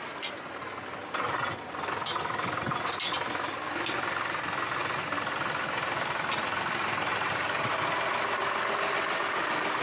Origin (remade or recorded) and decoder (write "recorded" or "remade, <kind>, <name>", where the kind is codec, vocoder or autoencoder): recorded